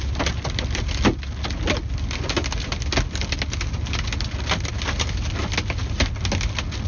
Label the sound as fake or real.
real